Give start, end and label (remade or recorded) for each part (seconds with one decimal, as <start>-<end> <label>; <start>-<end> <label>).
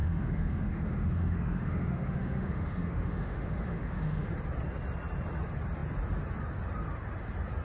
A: 0.0-4.3 remade; 4.3-7.6 recorded